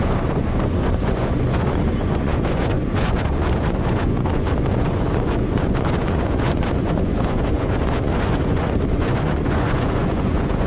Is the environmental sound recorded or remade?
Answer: remade